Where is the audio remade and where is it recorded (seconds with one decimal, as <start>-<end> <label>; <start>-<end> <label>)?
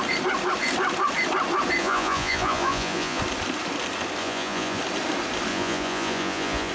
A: 0.0-1.8 recorded; 1.8-3.2 remade; 3.2-4.2 recorded; 4.2-4.8 remade; 4.8-5.5 recorded; 5.5-6.7 remade